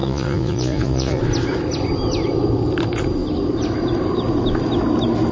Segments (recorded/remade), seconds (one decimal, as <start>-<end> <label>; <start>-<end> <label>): 0.0-1.2 remade; 1.2-5.3 recorded